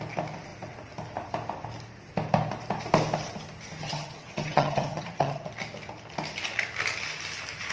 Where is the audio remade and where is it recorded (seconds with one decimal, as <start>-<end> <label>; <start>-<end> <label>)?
0.0-3.8 recorded; 3.8-5.5 remade; 5.5-7.7 recorded